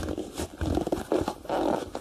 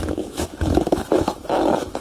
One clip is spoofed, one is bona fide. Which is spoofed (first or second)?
second